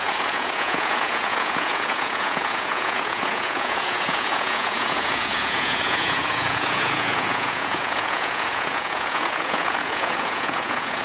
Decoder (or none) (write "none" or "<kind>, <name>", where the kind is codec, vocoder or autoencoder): vocoder, Vocos